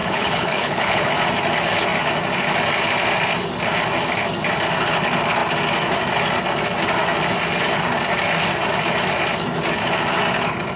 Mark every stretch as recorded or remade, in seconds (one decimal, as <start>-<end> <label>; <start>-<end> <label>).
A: 0.0-1.1 remade; 1.1-10.8 recorded